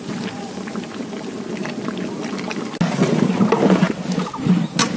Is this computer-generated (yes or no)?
no